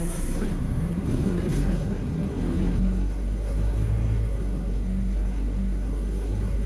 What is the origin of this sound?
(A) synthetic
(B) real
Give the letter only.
A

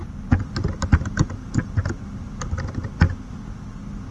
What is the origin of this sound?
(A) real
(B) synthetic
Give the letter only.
A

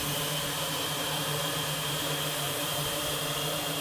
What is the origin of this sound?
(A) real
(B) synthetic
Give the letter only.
B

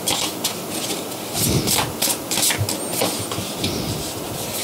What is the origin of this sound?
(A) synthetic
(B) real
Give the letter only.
B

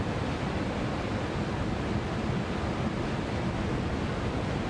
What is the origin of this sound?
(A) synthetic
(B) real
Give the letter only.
B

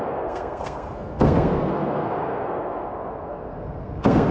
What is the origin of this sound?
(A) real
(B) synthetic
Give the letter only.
B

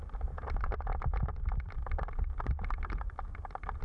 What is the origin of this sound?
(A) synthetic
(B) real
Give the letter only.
A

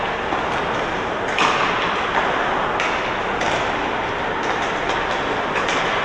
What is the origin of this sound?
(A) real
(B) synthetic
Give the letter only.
A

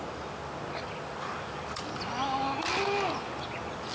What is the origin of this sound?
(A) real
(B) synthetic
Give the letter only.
A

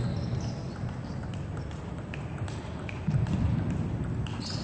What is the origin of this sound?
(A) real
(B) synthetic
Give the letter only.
A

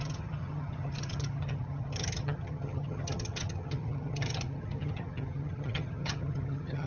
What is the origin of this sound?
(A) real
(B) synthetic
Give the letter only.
B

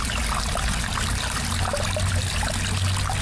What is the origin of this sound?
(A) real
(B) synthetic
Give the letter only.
A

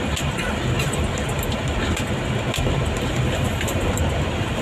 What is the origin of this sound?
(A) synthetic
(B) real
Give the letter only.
B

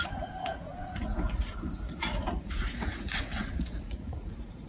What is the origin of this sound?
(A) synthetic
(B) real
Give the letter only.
A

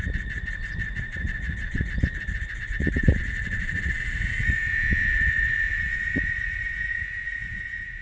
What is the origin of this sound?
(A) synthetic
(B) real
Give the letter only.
A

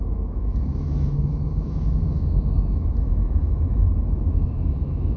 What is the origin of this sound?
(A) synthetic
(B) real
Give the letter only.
A